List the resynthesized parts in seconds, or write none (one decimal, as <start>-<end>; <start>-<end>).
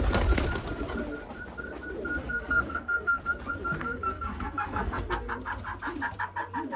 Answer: 2.2-3.2; 3.8-5.3